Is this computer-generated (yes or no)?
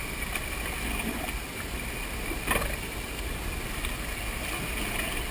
no